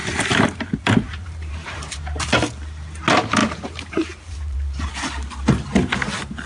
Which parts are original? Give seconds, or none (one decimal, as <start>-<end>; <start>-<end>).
0.6-1.2; 2.0-3.4; 4.9-6.5